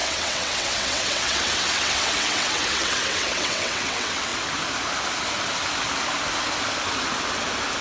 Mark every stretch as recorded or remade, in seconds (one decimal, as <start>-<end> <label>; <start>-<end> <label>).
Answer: 0.0-4.3 remade; 4.3-7.8 recorded